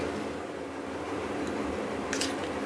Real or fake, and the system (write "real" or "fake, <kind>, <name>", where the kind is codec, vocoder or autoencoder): real